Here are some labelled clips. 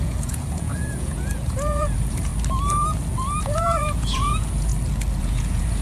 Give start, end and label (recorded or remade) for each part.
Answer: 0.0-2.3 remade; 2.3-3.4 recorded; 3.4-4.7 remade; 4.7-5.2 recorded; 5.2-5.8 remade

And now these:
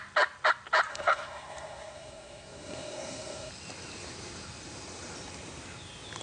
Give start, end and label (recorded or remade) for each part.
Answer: 0.0-0.9 recorded; 0.9-3.5 remade; 3.5-6.2 recorded